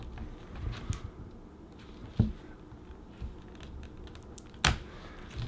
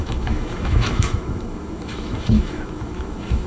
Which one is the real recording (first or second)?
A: first